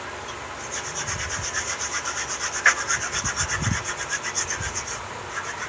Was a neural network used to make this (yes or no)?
no